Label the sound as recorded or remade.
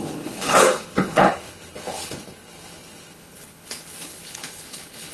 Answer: remade